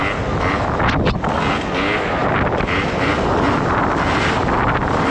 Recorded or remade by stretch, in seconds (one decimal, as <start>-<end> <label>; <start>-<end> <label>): 0.0-2.2 recorded; 2.2-3.1 remade; 3.1-5.1 recorded